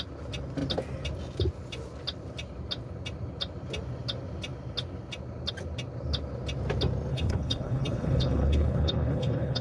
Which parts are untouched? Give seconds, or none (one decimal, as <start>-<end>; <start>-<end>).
0.0-7.1